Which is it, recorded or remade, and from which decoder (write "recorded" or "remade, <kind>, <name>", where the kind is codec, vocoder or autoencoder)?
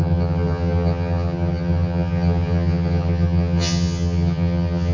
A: remade, vocoder, HiFi-GAN